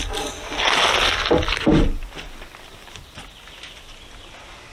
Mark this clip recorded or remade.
recorded